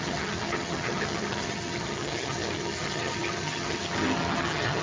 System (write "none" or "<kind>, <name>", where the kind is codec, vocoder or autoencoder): vocoder, HiFi-GAN